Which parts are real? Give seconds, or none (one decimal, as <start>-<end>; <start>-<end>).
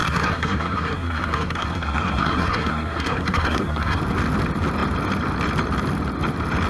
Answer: 4.0-6.7